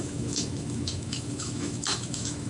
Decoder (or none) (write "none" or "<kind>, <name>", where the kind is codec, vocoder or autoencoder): autoencoder, DAC-VAE